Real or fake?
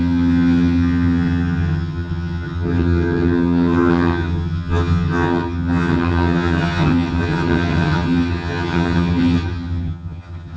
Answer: fake